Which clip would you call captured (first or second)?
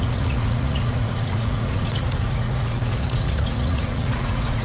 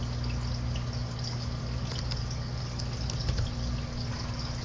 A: second